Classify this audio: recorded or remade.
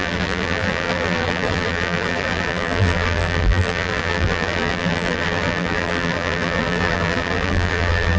remade